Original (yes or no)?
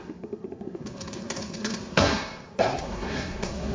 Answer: no